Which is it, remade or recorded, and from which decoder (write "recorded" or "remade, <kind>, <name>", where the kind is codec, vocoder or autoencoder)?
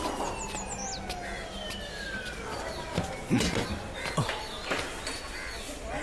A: recorded